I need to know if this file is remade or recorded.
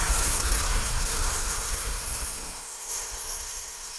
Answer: remade